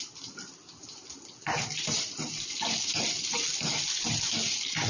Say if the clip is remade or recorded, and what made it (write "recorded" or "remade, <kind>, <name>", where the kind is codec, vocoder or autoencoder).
remade, vocoder, BigVGAN v2